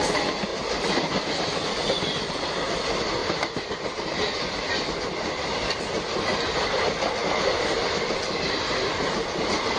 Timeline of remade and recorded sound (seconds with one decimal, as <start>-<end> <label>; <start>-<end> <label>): 0.0-9.8 recorded